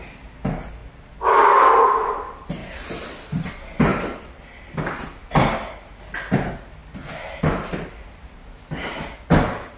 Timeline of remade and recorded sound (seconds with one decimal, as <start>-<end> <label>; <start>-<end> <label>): 0.0-9.8 recorded

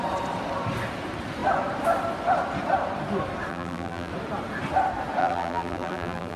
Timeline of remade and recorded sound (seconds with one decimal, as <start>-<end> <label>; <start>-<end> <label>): 0.0-3.5 recorded; 3.5-4.1 remade; 4.1-5.2 recorded; 5.2-6.4 remade

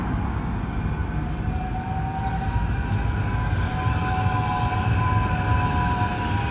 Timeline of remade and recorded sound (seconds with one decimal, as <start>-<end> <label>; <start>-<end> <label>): 0.0-6.5 recorded